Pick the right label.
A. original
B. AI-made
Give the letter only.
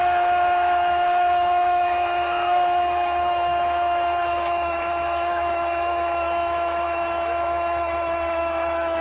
B